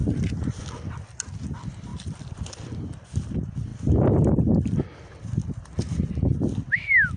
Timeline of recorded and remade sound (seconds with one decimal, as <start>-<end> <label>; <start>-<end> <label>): 0.0-0.6 remade; 0.6-1.9 recorded; 1.9-2.4 remade; 2.4-3.7 recorded; 3.7-6.1 remade; 6.1-7.2 recorded